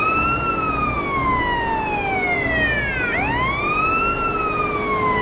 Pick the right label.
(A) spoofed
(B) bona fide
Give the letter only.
B